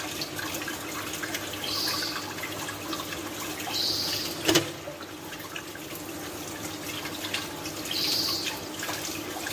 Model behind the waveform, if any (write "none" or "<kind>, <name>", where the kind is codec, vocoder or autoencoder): none